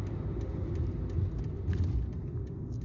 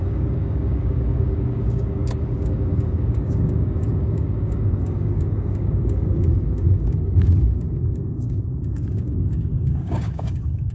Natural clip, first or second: first